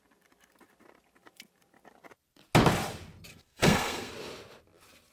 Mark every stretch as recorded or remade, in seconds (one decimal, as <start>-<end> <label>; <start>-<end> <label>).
0.0-3.3 recorded; 3.3-4.1 remade; 4.1-5.1 recorded